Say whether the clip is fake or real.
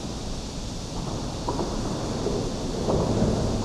real